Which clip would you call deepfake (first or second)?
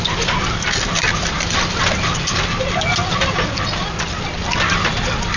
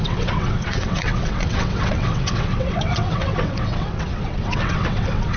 second